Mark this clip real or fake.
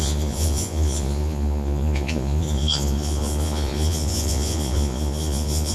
fake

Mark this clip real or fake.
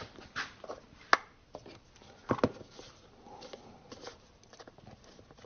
real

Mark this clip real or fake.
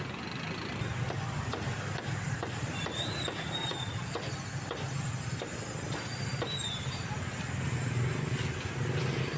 real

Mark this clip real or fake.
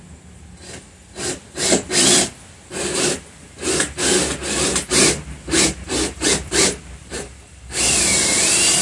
real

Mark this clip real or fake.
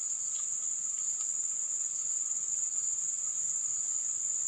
real